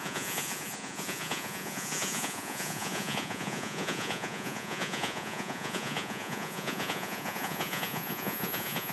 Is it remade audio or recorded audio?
remade